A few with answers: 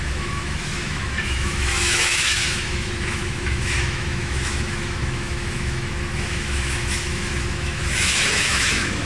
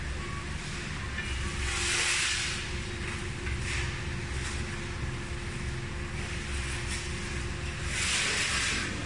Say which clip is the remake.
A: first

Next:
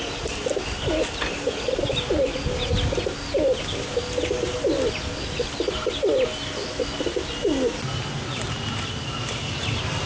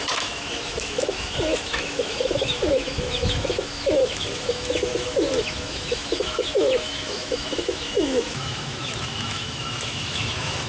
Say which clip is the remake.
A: second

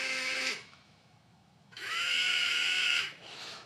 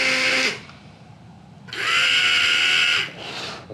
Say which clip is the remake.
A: first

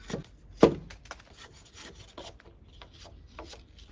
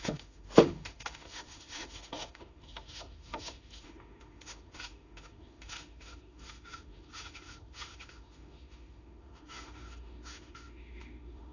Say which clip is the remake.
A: second